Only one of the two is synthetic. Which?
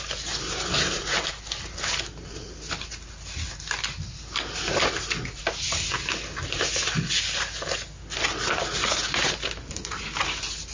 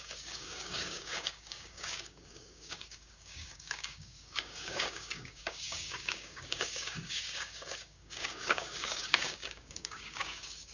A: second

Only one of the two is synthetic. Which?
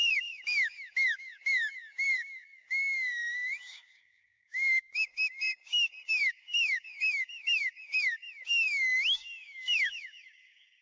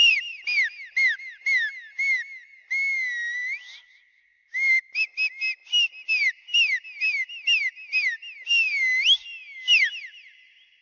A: first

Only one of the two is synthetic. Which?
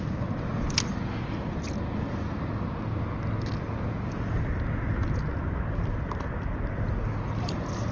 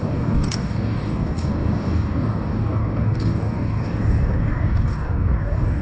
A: second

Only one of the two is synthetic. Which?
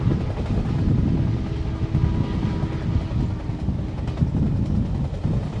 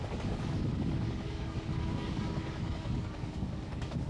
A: second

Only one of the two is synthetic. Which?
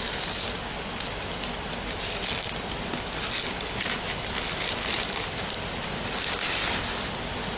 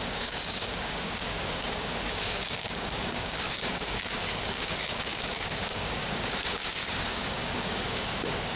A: second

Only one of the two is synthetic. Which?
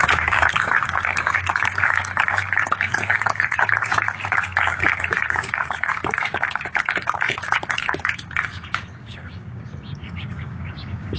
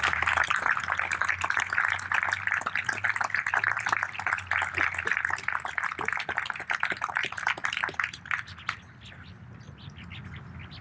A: first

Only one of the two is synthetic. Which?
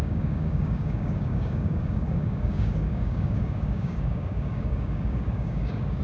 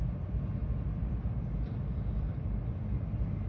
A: first